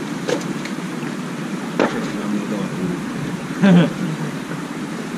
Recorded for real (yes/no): no